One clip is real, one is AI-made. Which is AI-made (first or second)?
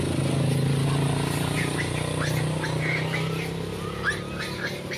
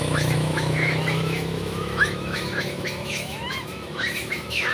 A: second